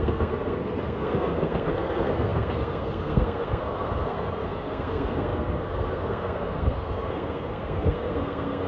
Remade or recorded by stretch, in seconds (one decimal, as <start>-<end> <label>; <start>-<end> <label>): 0.0-8.7 remade